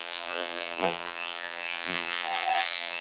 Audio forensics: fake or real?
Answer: fake